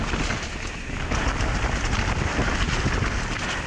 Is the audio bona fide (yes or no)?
yes